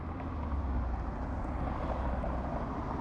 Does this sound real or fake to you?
real